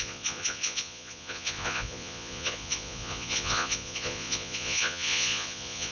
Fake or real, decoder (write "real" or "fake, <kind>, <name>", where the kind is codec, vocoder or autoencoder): fake, vocoder, Vocos